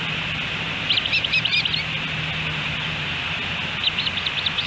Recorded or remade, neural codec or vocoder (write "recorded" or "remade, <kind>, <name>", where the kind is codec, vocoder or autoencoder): recorded